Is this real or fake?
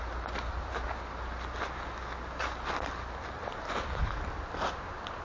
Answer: real